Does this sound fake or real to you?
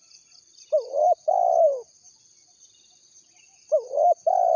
real